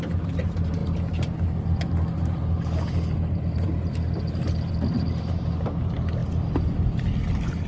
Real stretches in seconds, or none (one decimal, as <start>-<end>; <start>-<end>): 0.0-7.7